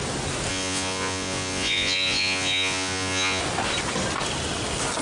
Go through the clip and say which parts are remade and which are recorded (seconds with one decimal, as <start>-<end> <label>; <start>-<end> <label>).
0.0-0.5 recorded; 0.5-3.4 remade; 3.4-5.0 recorded